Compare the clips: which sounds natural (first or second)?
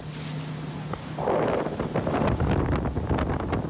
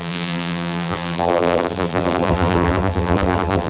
first